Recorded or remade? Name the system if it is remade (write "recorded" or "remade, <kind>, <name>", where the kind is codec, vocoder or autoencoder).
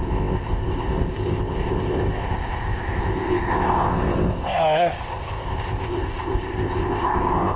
remade, codec, ZipCodec